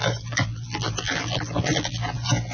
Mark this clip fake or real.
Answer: fake